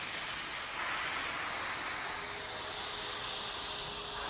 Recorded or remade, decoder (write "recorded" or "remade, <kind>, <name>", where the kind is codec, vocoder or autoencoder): recorded